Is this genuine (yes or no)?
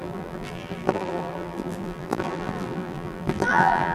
no